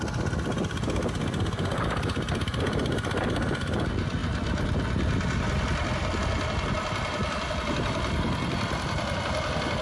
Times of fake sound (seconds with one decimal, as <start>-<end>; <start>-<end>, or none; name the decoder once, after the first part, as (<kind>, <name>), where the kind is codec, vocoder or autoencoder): none